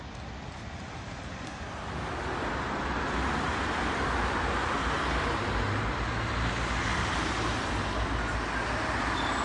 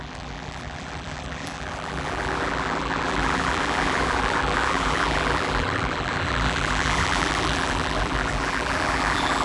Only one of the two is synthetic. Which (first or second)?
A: second